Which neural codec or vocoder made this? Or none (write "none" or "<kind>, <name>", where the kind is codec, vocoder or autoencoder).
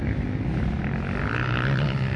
none